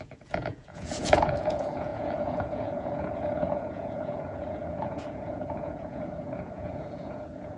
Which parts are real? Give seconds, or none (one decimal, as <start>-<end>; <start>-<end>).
none